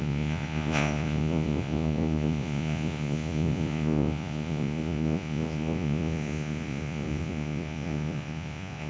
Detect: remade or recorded remade